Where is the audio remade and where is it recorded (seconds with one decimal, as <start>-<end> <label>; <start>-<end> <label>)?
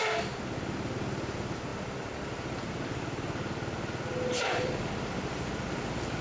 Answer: 0.0-1.7 recorded; 1.7-5.4 remade; 5.4-6.2 recorded